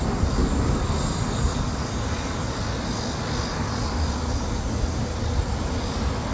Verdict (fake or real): real